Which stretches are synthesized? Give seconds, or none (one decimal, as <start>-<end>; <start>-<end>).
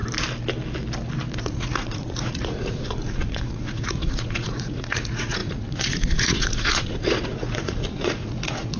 1.4-8.8